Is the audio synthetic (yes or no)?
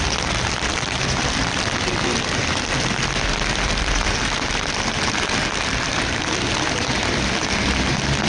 yes